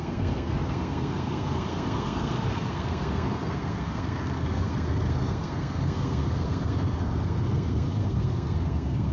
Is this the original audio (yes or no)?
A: no